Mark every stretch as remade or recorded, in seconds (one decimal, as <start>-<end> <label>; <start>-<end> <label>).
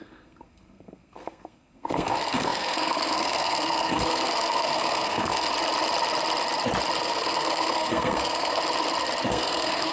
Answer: 0.0-5.5 remade; 5.5-7.0 recorded; 7.0-8.6 remade; 8.6-9.3 recorded; 9.3-9.9 remade